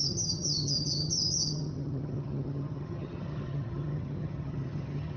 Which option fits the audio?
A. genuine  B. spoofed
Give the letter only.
B